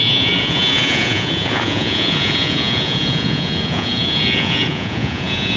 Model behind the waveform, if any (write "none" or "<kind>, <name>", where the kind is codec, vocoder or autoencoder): vocoder, Vocos